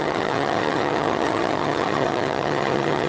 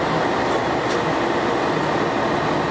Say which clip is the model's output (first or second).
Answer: first